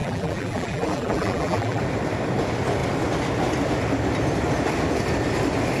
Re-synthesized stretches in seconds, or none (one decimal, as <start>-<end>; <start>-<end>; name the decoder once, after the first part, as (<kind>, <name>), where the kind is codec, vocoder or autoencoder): 0.0-1.8 (vocoder, BigVGAN v2)